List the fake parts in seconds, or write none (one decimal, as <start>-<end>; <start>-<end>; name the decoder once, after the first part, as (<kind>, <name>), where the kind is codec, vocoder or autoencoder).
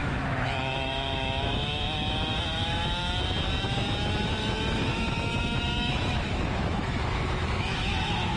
0.0-2.8 (autoencoder, DAC-VAE); 4.2-8.4